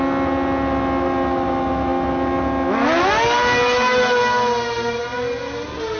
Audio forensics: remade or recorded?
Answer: recorded